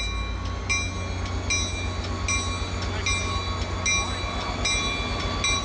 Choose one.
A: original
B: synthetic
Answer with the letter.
A